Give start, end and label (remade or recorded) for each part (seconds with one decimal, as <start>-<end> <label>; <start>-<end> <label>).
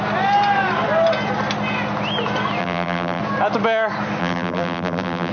0.0-2.6 recorded; 2.6-3.2 remade; 3.2-4.2 recorded; 4.2-5.3 remade